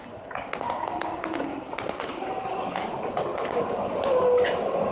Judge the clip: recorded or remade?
recorded